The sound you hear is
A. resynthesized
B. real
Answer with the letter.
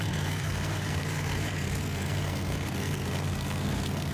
A